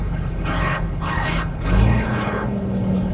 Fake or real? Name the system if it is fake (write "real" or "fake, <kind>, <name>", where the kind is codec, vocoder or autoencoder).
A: fake, codec, HILCodec